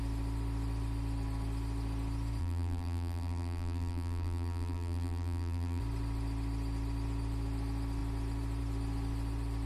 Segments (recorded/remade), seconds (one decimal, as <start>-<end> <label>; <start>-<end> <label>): 0.0-2.4 recorded; 2.4-5.8 remade; 5.8-9.7 recorded